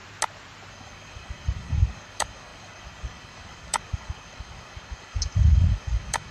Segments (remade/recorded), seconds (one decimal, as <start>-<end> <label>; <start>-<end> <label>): 0.0-0.7 recorded; 0.7-6.3 remade